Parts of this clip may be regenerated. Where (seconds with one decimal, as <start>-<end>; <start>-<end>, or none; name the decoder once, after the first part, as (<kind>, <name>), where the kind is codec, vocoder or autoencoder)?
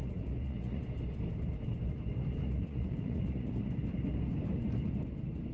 0.0-0.8 (vocoder, Vocos); 2.4-3.7